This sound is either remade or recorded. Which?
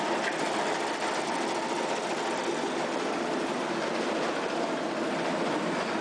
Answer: recorded